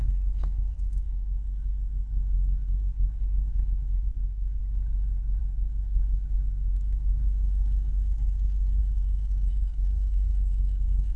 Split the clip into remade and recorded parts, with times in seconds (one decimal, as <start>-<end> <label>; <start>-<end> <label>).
0.0-4.6 remade; 4.6-5.4 recorded; 5.4-11.2 remade